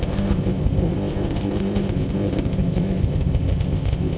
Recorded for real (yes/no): no